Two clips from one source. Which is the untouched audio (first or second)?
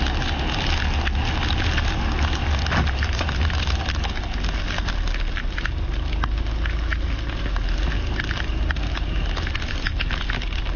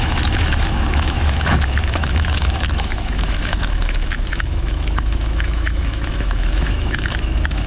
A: first